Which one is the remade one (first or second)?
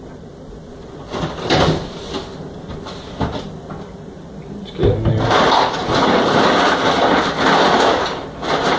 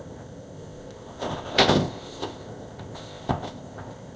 second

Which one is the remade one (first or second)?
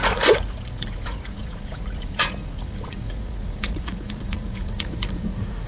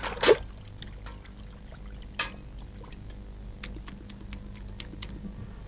first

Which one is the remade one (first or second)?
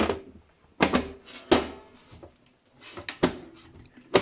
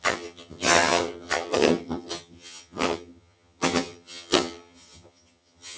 second